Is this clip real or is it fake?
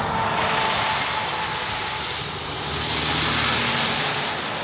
real